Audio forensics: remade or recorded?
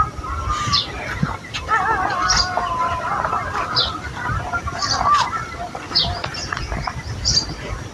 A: recorded